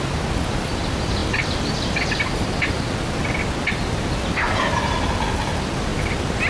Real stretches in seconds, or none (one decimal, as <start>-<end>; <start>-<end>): 0.0-6.5